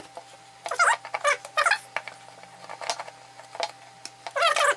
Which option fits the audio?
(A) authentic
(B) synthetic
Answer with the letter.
A